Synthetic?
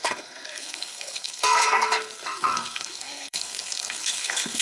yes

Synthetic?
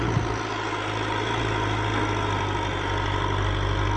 no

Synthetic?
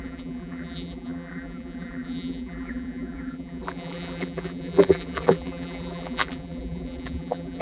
yes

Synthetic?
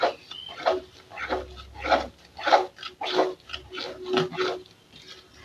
no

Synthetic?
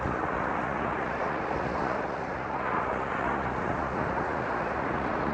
yes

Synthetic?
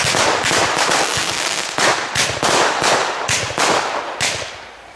no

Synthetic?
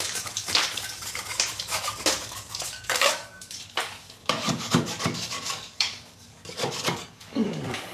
yes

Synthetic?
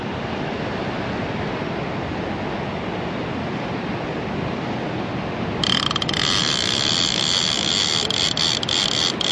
no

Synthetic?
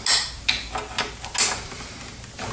no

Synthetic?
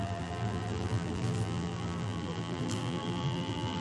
yes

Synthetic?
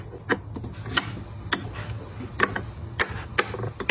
no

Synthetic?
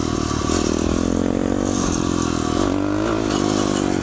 no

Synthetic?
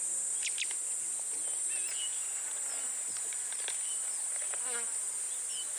no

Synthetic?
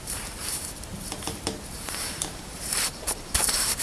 yes